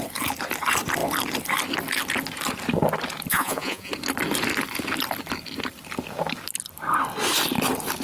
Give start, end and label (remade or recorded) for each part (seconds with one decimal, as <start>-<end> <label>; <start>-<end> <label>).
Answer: 0.0-3.3 recorded; 3.3-3.9 remade; 3.9-8.0 recorded